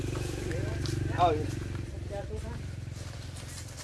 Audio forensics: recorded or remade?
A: recorded